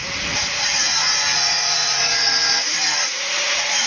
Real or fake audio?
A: fake